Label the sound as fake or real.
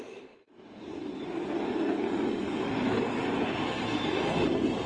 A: real